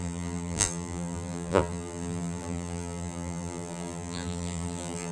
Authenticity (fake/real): fake